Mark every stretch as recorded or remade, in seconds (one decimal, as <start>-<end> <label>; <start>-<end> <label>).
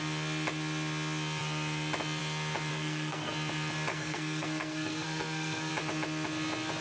0.0-2.7 recorded; 2.7-3.3 remade; 3.3-3.9 recorded; 3.9-5.7 remade; 5.7-6.8 recorded